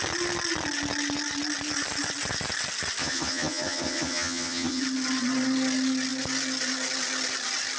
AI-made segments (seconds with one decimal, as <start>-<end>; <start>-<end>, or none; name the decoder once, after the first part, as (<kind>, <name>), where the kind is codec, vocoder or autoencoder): 3.0-4.8 (vocoder, HiFi-GAN)